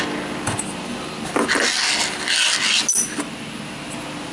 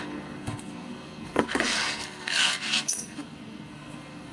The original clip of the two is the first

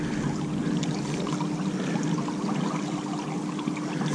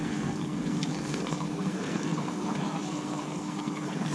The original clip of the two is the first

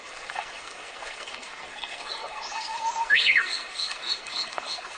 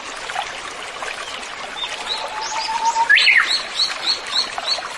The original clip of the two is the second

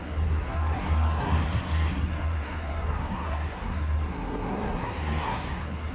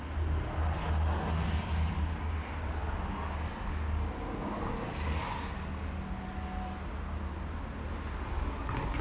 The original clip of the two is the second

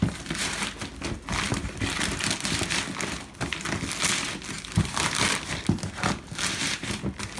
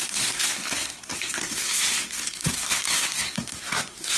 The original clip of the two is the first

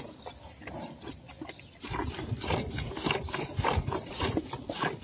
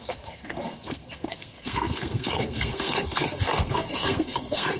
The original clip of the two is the first